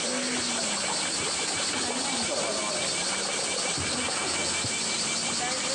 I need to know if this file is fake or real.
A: real